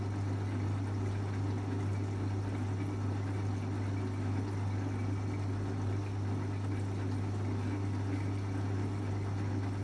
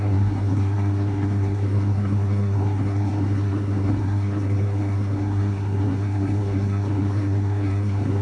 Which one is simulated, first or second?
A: second